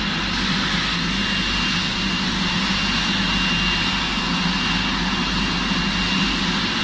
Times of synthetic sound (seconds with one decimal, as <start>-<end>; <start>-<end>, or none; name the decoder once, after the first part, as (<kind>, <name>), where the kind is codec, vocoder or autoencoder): none